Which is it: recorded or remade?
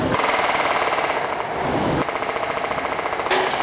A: recorded